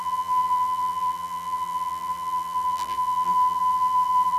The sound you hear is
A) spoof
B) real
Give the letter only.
A